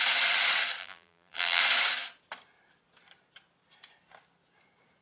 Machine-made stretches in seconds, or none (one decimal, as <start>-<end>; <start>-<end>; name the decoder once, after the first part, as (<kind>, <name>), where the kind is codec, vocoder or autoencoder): 0.8-1.6 (vocoder, BigVGAN v2)